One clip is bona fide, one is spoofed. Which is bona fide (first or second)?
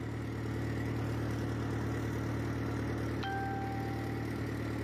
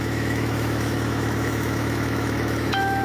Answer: first